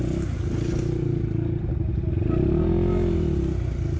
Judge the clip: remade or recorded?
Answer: recorded